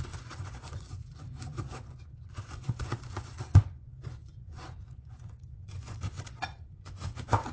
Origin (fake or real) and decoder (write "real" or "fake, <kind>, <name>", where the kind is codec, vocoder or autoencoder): fake, vocoder, Vocos